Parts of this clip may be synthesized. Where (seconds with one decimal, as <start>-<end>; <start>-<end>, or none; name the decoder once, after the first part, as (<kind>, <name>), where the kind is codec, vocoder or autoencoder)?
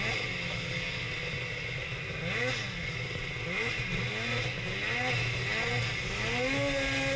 none